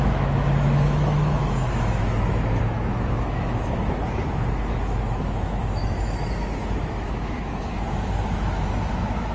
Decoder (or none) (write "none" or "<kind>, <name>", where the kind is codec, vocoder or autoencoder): autoencoder, DAC-VAE